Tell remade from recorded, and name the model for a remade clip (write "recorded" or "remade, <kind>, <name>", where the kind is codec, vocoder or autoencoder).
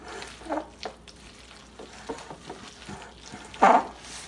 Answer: recorded